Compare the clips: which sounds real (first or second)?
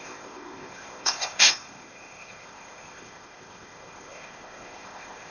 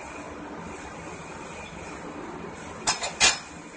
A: second